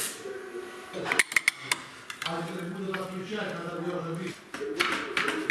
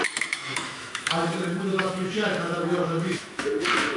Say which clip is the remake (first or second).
second